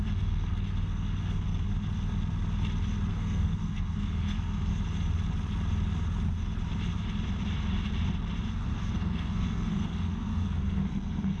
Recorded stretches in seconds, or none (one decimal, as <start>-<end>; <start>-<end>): 1.7-3.1; 4.7-8.4

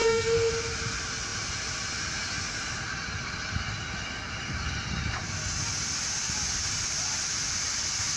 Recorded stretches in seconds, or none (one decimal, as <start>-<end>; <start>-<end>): 0.5-8.2

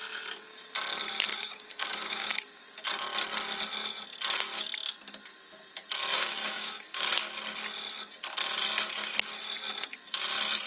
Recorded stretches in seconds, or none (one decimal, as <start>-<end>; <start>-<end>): 0.0-1.3; 2.4-6.1; 7.1-10.7

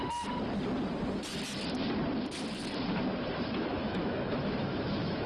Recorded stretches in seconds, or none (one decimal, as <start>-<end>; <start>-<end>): 0.0-3.7

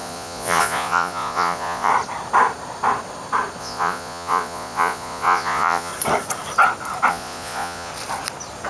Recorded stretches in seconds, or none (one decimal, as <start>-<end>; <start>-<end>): 1.9-3.6; 5.9-7.1; 7.9-8.7

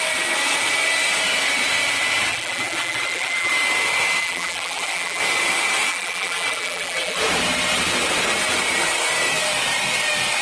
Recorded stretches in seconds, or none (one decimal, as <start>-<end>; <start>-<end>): 0.0-2.3; 3.5-4.2; 5.2-5.9; 7.2-10.4